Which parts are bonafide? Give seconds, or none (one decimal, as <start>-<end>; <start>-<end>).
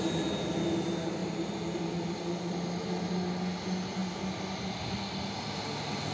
0.0-1.2; 2.5-4.0; 4.8-6.1